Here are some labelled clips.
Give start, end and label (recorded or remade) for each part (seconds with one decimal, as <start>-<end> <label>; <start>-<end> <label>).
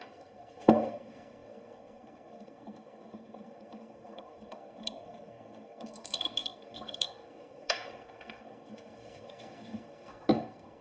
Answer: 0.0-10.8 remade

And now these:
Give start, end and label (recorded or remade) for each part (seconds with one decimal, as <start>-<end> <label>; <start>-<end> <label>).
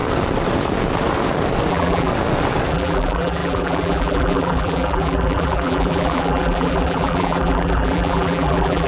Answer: 0.0-1.7 recorded; 1.7-2.1 remade; 2.1-2.7 recorded; 2.7-8.9 remade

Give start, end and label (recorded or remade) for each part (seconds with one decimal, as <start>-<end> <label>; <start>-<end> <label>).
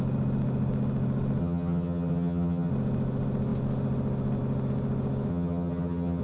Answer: 0.0-1.4 recorded; 1.4-2.7 remade; 2.7-5.3 recorded; 5.3-6.2 remade